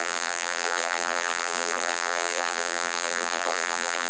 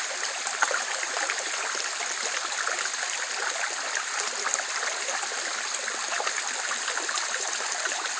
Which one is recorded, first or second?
second